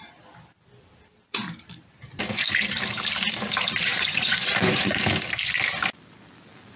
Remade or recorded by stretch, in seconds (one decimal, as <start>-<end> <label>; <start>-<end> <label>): 0.0-3.9 recorded; 3.9-5.0 remade; 5.0-6.8 recorded